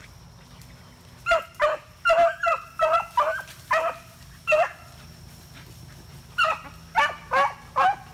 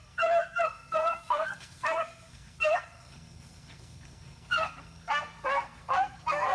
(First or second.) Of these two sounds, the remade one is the second